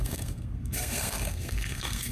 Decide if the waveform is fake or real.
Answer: fake